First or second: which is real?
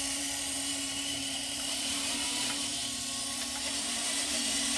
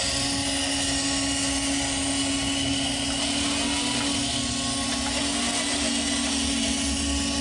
second